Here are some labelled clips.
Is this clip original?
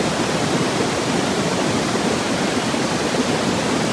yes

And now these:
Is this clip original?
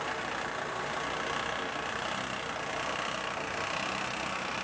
yes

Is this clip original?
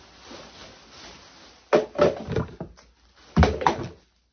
yes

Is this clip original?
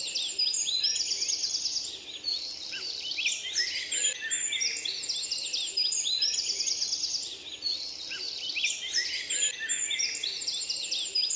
yes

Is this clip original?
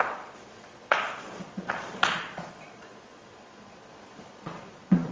no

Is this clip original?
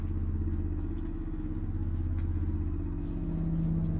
yes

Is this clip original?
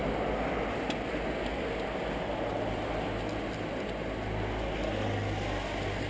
yes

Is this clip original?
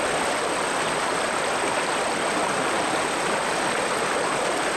yes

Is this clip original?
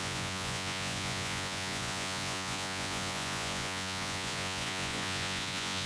no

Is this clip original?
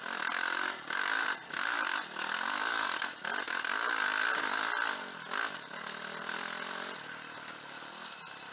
yes